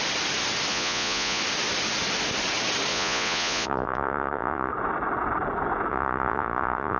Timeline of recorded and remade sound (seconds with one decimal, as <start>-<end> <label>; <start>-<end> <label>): 0.0-0.7 recorded; 0.7-1.4 remade; 1.4-2.9 recorded; 2.9-4.7 remade; 4.7-5.9 recorded; 5.9-7.0 remade